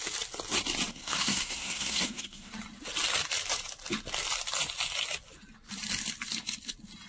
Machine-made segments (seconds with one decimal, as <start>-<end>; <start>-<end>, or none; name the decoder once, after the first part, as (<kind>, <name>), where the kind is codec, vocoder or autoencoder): 0.9-2.5 (codec, SNAC)